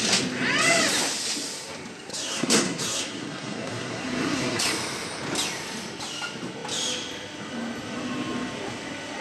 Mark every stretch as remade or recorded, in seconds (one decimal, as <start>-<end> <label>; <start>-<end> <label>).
0.0-2.1 recorded; 2.1-4.6 remade; 4.6-9.2 recorded